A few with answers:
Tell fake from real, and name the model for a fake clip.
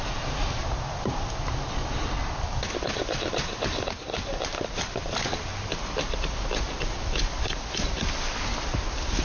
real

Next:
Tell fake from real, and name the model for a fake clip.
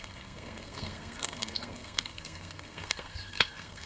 fake, codec, SNAC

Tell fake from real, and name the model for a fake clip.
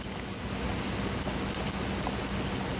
real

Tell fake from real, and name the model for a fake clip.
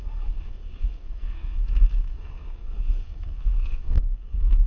fake, codec, SNAC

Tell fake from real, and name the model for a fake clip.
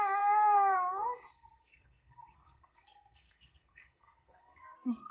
fake, codec, SNAC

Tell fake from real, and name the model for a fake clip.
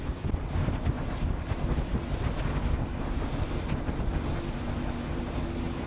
real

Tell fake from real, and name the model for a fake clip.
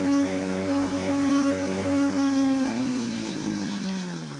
fake, codec, SNAC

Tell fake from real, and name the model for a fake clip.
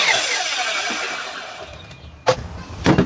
real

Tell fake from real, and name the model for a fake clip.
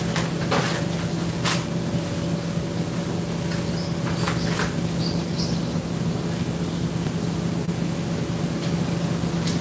real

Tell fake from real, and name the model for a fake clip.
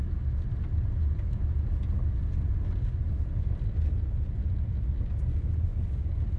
real